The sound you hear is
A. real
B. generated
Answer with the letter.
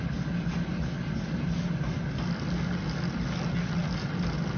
A